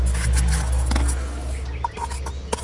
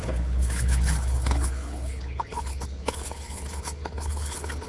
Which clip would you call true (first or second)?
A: first